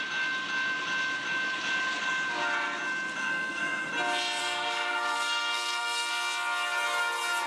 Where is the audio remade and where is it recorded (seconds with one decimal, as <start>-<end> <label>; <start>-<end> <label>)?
0.0-3.2 recorded; 3.2-3.9 remade; 3.9-4.4 recorded; 4.4-6.1 remade; 6.1-7.5 recorded